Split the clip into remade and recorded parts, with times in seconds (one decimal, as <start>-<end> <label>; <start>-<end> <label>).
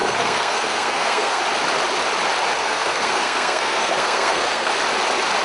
0.0-1.4 remade; 1.4-2.6 recorded; 2.6-4.7 remade; 4.7-5.4 recorded